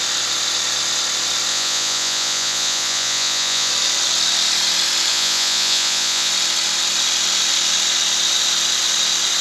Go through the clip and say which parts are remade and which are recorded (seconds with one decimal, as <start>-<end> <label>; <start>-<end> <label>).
0.0-1.5 recorded; 1.5-3.7 remade; 3.7-5.1 recorded; 5.1-6.3 remade; 6.3-9.4 recorded